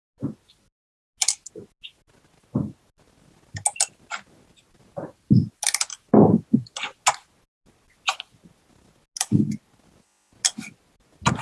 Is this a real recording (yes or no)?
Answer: yes